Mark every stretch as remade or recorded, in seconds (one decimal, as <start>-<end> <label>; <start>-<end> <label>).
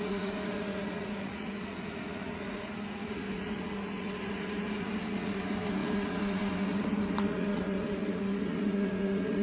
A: 0.0-9.4 remade